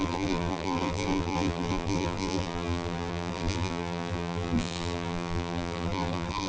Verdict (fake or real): fake